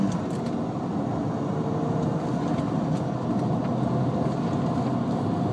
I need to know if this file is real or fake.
real